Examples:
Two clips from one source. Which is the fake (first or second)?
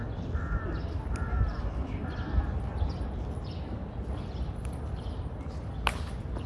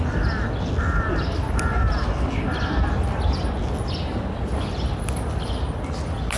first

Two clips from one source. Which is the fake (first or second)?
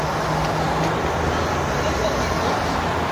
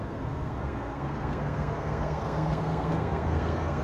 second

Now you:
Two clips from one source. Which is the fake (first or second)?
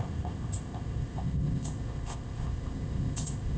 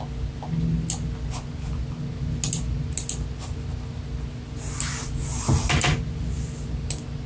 first